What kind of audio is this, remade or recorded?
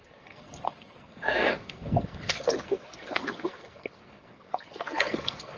remade